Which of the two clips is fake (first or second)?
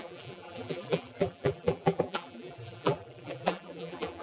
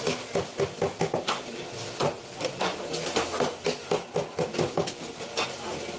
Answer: first